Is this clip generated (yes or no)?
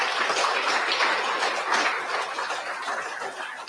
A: no